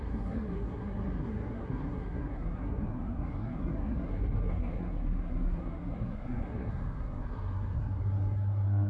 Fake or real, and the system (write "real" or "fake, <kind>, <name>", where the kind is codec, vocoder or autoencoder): fake, codec, SNAC